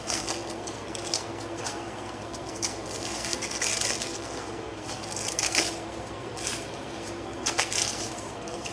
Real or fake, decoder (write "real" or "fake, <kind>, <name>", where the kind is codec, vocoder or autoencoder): fake, codec, SNAC